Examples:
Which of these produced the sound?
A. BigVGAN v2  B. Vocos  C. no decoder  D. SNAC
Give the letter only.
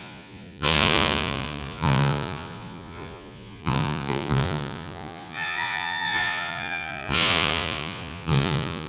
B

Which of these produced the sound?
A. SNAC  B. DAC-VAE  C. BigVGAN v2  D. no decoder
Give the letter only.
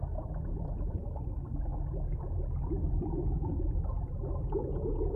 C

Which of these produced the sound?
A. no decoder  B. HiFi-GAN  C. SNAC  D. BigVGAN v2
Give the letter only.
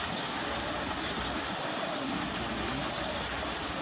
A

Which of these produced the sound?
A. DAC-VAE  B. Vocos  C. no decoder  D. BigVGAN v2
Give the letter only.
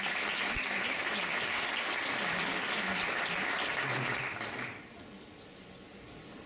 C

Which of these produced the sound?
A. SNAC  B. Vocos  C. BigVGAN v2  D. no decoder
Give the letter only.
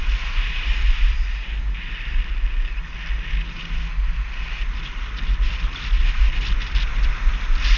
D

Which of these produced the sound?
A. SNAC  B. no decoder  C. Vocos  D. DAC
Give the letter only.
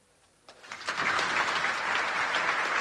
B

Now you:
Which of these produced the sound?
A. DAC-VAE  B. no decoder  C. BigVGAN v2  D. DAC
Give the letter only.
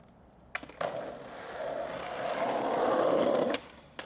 B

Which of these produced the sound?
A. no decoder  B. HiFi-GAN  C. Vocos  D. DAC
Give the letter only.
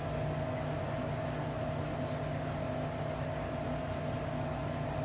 A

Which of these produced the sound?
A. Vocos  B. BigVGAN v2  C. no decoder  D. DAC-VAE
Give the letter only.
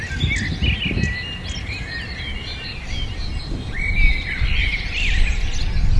C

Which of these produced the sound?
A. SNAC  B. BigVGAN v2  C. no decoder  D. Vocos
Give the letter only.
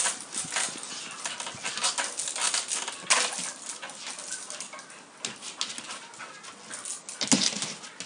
C